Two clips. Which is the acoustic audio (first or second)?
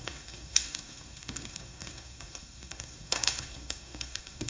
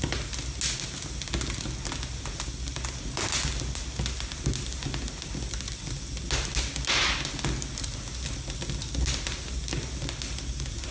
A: second